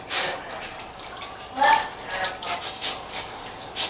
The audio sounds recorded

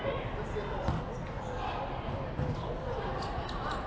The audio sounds recorded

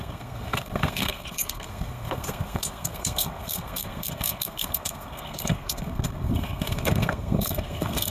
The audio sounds remade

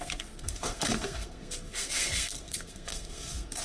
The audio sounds remade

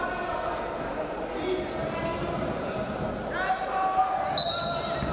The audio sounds recorded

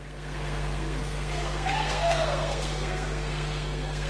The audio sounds remade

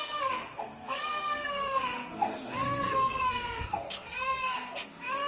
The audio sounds remade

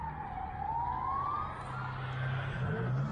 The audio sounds recorded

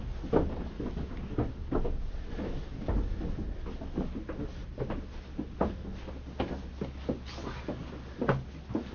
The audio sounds recorded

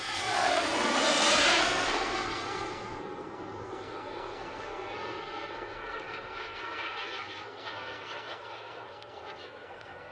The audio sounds remade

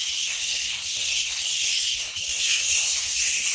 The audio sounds remade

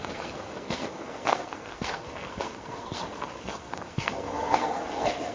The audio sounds remade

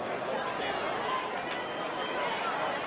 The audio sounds recorded